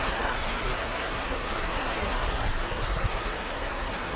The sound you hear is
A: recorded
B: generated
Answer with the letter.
B